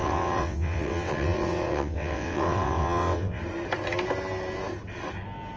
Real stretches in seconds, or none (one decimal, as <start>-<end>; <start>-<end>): 3.4-5.6